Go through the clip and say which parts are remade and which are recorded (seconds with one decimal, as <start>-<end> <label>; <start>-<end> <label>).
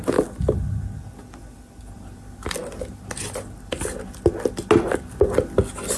0.0-6.0 recorded